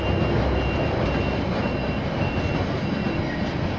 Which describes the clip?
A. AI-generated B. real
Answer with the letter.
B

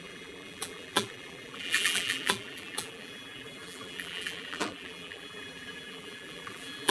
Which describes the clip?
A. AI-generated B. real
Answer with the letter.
A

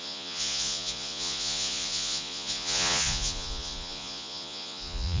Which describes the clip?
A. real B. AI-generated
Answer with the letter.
B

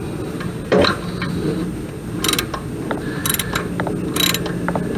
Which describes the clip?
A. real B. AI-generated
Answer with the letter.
A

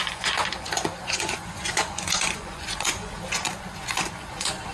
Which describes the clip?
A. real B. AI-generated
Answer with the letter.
B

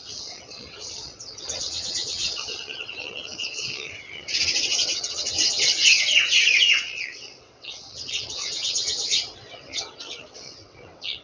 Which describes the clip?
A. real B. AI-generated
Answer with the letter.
B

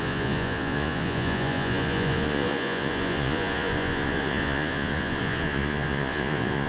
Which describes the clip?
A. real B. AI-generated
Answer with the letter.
B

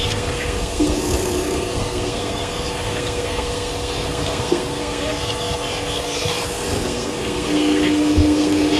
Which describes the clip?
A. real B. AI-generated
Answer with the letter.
B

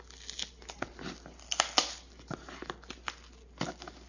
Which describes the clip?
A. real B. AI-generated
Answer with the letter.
A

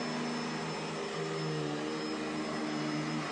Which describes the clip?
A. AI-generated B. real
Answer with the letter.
B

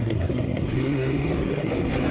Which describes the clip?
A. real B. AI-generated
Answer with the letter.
B